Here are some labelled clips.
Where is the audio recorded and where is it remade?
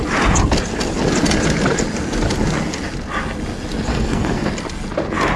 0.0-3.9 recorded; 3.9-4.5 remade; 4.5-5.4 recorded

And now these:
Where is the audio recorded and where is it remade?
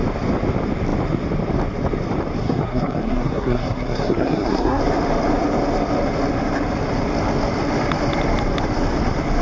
0.0-2.4 recorded; 2.4-4.8 remade; 4.8-9.4 recorded